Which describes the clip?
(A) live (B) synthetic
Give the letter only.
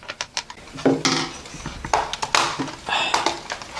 A